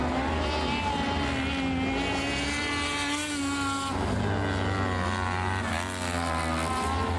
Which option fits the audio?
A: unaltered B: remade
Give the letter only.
A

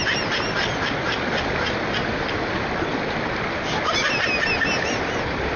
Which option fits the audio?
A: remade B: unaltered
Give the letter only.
B